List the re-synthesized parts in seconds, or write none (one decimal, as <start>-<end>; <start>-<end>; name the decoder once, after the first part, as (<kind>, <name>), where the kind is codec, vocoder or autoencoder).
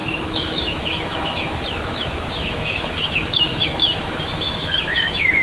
0.0-5.4 (autoencoder, DAC-VAE)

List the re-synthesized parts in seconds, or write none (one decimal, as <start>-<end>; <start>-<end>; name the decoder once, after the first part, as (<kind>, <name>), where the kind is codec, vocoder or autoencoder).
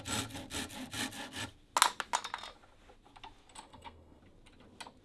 3.7-4.2 (codec, SNAC)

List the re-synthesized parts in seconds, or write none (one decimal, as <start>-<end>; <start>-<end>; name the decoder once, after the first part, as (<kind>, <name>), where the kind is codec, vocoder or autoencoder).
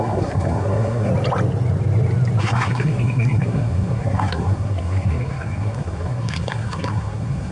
0.0-1.1 (codec, SNAC); 2.4-7.5